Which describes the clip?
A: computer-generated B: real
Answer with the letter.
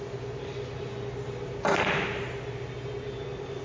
B